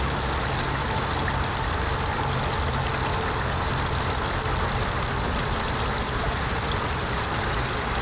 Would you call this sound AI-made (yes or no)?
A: yes